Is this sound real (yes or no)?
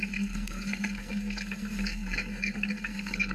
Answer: no